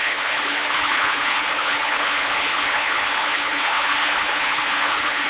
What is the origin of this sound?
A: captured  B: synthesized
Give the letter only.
B